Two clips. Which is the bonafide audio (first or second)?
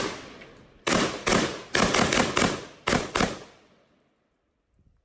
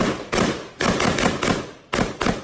second